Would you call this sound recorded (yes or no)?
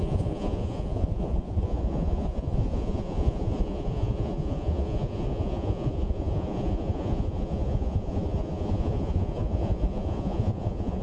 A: no